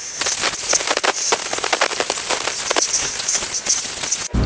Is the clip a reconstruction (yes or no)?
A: no